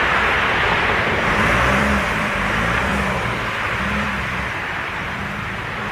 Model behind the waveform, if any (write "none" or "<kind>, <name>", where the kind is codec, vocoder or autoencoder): vocoder, BigVGAN v2